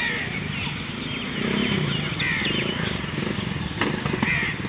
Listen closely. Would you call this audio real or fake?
real